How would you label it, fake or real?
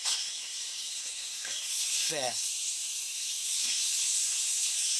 fake